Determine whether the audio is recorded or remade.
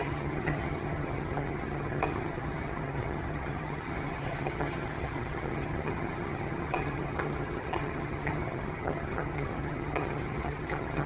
remade